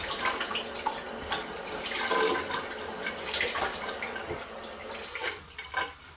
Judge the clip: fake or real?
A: real